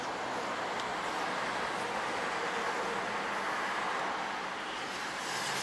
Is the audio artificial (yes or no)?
no